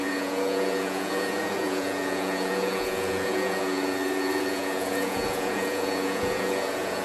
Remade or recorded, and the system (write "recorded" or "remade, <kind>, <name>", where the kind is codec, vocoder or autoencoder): remade, vocoder, Vocos